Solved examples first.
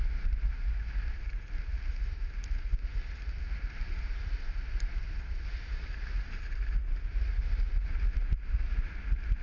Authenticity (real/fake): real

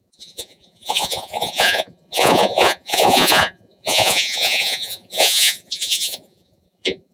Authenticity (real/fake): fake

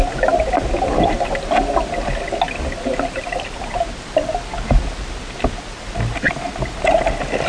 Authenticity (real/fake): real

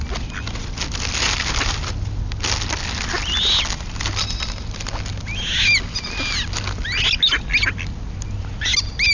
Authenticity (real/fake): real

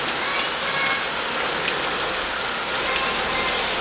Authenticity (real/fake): real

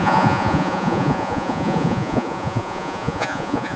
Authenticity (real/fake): fake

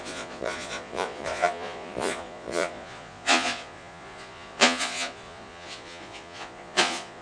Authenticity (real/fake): fake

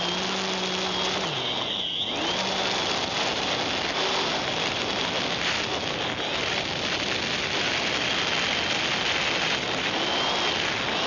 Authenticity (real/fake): real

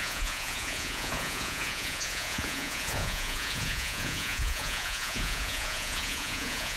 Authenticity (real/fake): fake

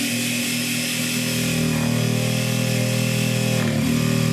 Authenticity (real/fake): real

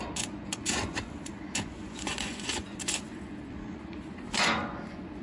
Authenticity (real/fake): fake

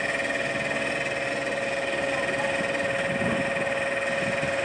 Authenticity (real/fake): real